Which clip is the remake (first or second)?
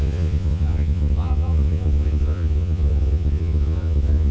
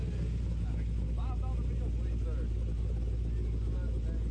first